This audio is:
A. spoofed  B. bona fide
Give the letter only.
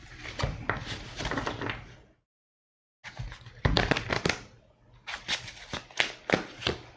B